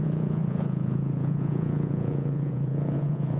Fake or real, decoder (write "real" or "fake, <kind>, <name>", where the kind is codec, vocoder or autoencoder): fake, vocoder, Vocos